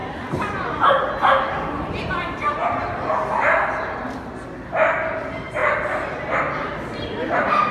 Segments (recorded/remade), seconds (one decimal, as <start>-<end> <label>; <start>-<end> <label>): 0.0-7.7 recorded